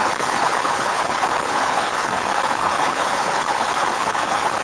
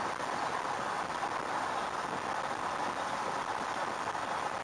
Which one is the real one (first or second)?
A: second